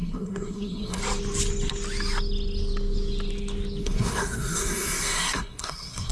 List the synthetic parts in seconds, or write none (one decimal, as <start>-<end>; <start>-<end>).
0.0-1.0; 3.8-6.1